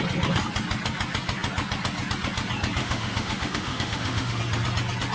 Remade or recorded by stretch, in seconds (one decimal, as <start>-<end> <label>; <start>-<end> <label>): 0.0-2.8 recorded; 2.8-4.4 remade; 4.4-5.1 recorded